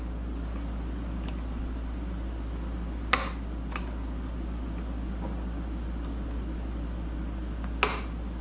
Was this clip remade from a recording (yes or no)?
no